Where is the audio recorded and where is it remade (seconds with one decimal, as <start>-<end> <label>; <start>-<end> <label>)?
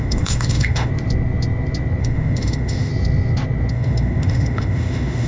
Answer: 0.0-0.9 remade; 0.9-2.0 recorded; 2.0-2.9 remade; 2.9-3.7 recorded; 3.7-5.3 remade